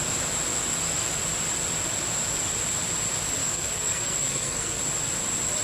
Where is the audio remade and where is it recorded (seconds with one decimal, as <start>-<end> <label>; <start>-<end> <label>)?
0.0-3.4 recorded; 3.4-4.8 remade; 4.8-5.6 recorded